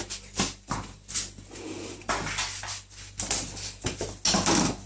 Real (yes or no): yes